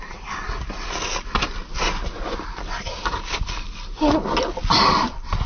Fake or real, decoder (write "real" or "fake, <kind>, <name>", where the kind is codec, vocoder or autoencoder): real